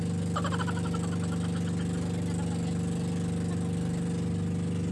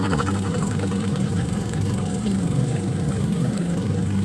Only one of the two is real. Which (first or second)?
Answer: first